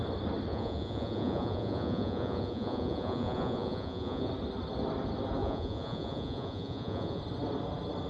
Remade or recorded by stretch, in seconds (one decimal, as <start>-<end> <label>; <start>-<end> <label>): 0.0-0.5 recorded; 0.5-4.3 remade; 4.3-5.4 recorded; 5.4-7.2 remade; 7.2-8.1 recorded